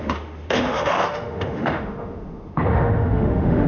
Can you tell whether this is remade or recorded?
remade